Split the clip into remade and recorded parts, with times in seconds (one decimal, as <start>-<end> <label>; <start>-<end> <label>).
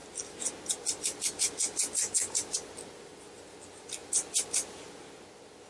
0.0-5.7 recorded